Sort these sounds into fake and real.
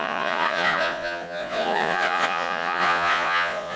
fake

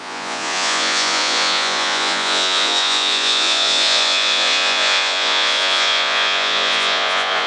fake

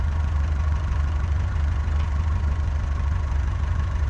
fake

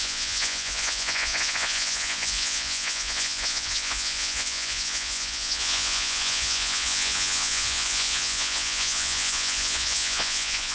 fake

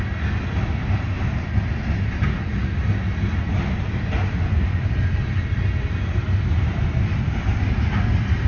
real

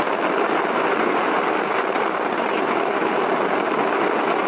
real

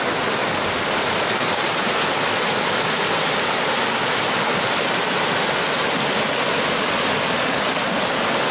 real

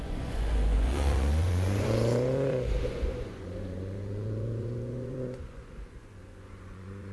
fake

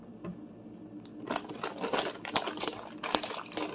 real